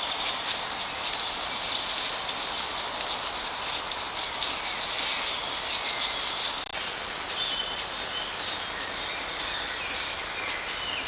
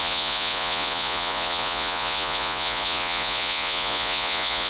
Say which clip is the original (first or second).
first